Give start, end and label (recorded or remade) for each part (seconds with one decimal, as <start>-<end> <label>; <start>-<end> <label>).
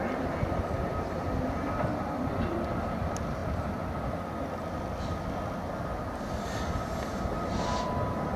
0.0-3.4 remade; 3.4-7.2 recorded; 7.2-8.4 remade